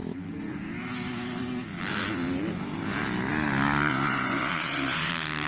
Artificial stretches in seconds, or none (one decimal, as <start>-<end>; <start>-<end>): 3.9-5.1